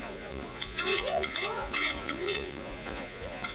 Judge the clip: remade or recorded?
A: remade